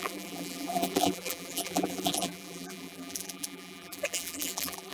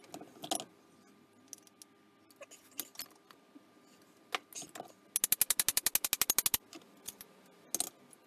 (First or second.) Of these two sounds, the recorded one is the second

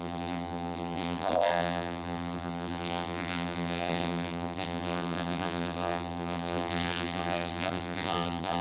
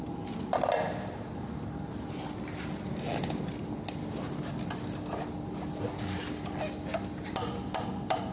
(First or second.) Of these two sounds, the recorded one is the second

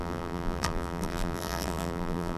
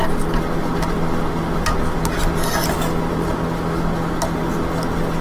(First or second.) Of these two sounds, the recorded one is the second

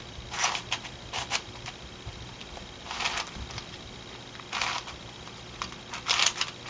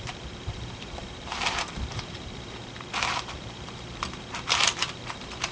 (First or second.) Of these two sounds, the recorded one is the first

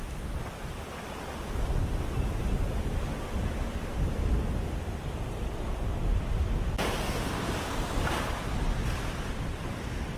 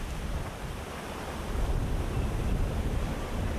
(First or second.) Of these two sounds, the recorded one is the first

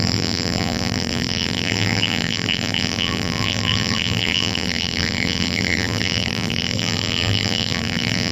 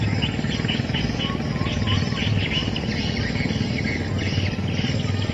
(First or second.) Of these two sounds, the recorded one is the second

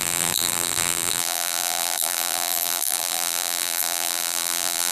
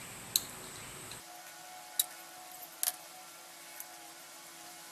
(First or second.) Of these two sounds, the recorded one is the second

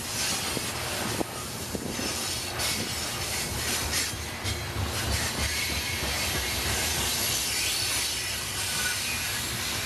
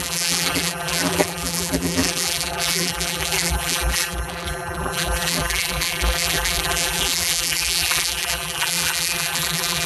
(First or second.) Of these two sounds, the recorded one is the first